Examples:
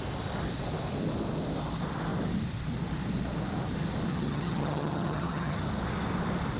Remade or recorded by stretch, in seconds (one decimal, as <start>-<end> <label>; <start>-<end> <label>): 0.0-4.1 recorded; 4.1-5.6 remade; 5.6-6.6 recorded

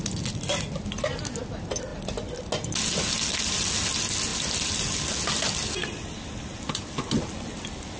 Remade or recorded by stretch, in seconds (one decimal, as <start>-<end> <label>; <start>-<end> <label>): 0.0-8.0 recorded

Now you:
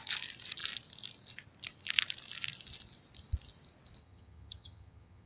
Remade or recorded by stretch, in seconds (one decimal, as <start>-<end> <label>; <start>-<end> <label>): 0.0-4.0 recorded; 4.0-5.3 remade

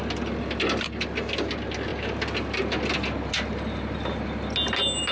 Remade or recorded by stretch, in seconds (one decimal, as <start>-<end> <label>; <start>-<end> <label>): 0.0-5.1 recorded